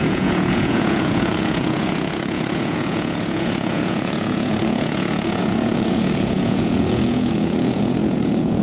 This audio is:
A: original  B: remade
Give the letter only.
B